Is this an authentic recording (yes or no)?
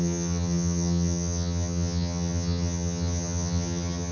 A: no